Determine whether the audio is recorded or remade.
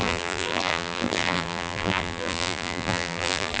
remade